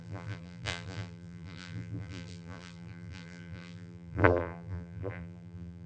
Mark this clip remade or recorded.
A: remade